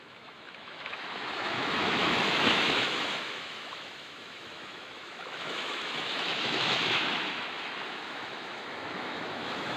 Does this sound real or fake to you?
fake